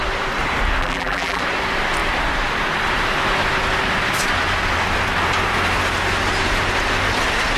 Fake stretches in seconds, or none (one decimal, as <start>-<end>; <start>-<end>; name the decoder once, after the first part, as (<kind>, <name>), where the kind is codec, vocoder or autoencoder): 0.8-1.4 (vocoder, BigVGAN v2)